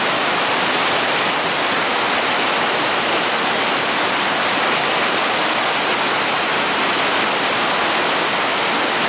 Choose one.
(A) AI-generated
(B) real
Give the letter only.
B